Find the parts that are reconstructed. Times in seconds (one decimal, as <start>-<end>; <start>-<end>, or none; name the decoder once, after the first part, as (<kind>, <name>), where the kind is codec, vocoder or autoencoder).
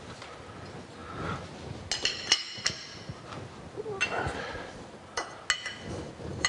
none